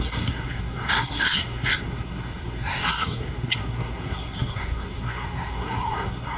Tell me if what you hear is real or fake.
fake